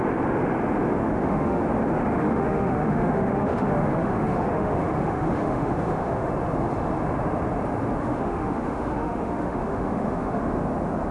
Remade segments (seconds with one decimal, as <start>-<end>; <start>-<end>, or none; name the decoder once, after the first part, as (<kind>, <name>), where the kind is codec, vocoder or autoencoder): 1.0-1.6 (autoencoder, DAC-VAE); 2.1-6.3; 8.0-10.4